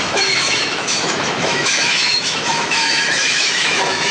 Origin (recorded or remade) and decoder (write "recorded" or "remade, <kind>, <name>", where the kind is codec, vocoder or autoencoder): remade, autoencoder, DAC-VAE